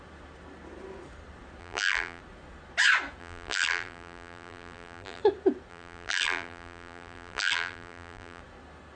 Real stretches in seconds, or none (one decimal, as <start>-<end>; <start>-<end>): 0.0-1.6; 2.2-3.2; 5.2-5.7; 8.4-9.0